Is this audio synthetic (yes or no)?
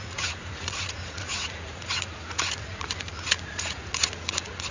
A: yes